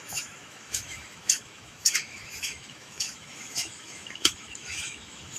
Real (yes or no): no